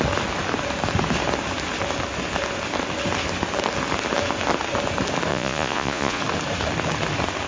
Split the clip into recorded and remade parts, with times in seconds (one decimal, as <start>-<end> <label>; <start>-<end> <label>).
0.0-5.3 recorded; 5.3-6.2 remade; 6.2-7.5 recorded